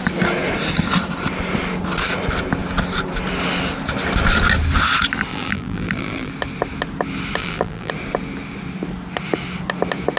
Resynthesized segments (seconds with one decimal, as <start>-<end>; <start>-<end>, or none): 5.3-6.3; 7.4-7.9